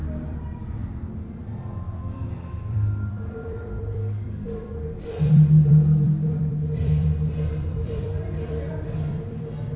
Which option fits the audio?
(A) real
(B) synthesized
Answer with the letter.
B